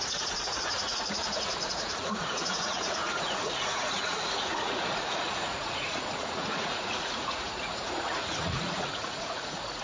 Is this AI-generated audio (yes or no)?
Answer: yes